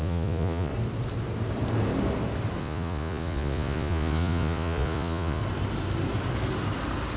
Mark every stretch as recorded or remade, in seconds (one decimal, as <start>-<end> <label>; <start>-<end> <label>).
0.0-0.7 remade; 0.7-2.6 recorded; 2.6-5.4 remade; 5.4-7.2 recorded